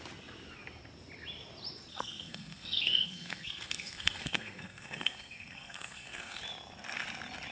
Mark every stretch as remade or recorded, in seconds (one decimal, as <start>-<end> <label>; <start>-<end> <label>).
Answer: 0.0-1.9 recorded; 1.9-6.4 remade; 6.4-7.5 recorded